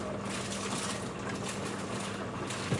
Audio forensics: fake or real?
real